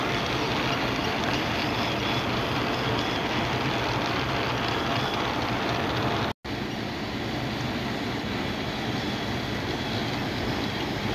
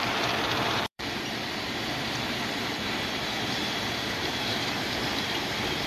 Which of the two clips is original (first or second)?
first